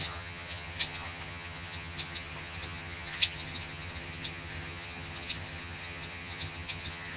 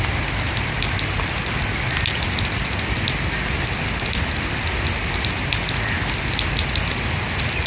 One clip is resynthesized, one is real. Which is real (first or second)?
second